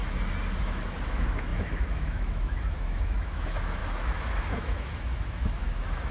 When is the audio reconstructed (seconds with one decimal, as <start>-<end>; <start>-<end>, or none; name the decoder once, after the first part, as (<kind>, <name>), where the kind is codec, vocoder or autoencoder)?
0.6-6.1 (autoencoder, DAC-VAE)